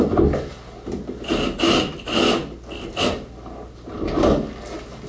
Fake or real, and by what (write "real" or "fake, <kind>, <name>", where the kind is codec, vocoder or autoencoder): real